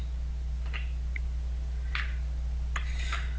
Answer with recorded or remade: recorded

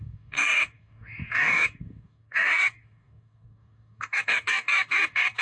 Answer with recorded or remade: remade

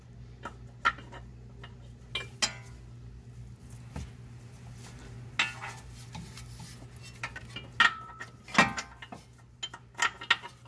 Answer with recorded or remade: recorded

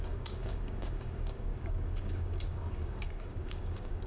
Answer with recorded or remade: remade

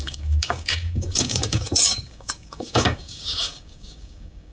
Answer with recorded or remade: remade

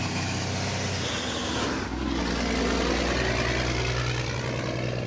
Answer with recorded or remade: recorded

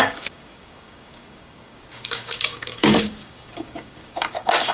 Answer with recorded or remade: remade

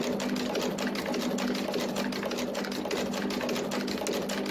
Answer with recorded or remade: recorded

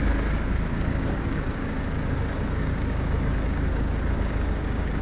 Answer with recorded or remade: remade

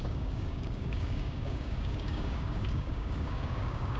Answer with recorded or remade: remade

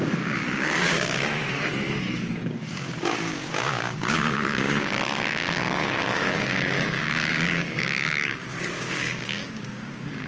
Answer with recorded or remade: remade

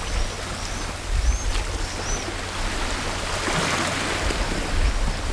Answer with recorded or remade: recorded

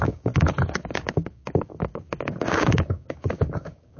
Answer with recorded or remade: remade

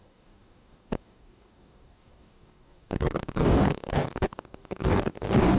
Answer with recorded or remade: remade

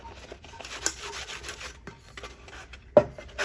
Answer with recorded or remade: recorded